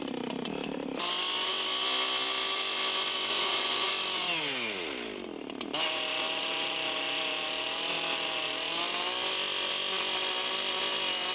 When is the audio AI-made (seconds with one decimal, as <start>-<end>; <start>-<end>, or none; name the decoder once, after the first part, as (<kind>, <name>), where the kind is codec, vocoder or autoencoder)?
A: 3.3-3.9 (vocoder, Vocos)